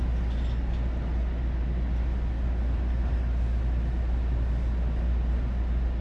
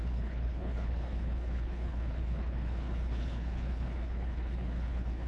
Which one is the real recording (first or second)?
first